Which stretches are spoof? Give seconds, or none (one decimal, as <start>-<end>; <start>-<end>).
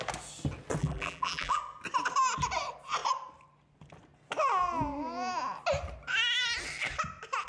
0.8-1.6